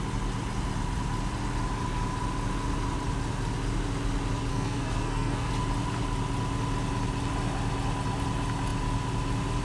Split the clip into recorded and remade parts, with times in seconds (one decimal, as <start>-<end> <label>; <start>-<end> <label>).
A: 0.0-4.5 recorded; 4.5-5.5 remade; 5.5-9.6 recorded